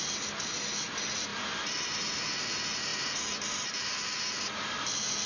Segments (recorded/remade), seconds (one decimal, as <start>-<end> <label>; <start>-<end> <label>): 0.0-5.3 recorded